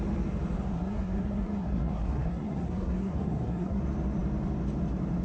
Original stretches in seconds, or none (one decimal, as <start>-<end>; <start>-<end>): 0.0-0.7; 3.8-5.2

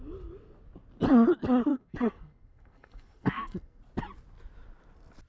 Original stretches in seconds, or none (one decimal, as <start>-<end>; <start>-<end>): 0.0-1.7; 3.8-5.3

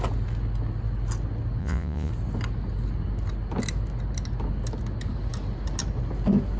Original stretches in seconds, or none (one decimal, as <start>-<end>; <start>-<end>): 0.0-1.6; 2.1-6.6

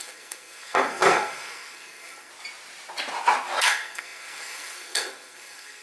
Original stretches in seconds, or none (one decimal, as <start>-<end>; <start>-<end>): 2.3-3.6

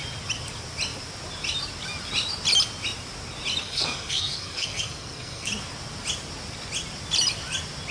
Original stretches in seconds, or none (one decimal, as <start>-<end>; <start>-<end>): 0.0-3.6; 5.5-7.9

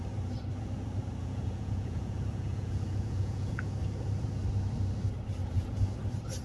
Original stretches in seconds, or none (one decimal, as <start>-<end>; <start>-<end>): 0.0-1.2; 3.7-5.4; 5.9-6.4

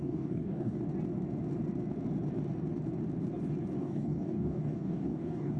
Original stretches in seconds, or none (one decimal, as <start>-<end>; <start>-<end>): 0.8-3.8